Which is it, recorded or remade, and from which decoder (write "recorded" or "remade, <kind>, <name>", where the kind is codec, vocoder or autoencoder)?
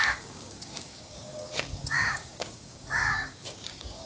remade, codec, DAC